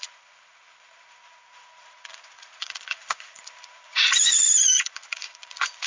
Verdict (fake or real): fake